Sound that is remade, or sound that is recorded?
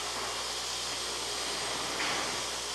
recorded